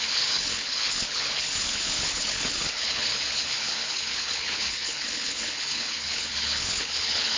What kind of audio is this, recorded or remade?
remade